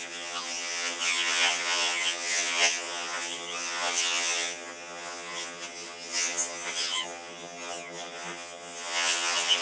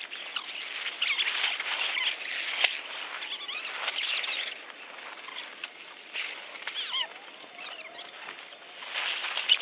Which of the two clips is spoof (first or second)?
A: first